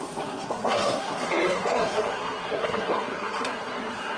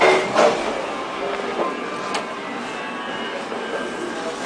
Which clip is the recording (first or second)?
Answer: second